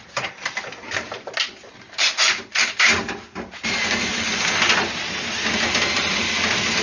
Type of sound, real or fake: real